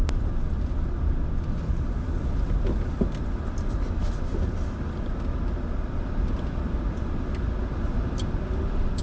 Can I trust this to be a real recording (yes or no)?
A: yes